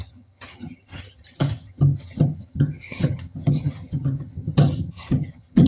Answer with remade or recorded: remade